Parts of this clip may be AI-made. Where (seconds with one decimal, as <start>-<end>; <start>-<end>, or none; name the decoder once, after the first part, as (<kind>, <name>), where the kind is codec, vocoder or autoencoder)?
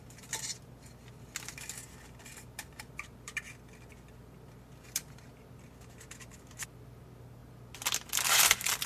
none